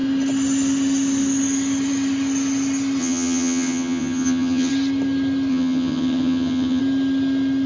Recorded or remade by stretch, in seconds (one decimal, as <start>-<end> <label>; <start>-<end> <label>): 0.0-3.0 recorded; 3.0-4.7 remade; 4.7-5.5 recorded; 5.5-6.8 remade; 6.8-7.7 recorded